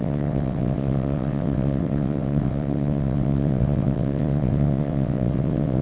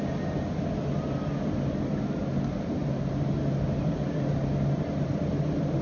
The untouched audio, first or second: second